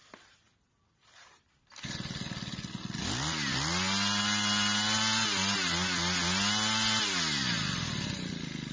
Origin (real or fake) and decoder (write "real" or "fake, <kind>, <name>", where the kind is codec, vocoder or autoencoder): real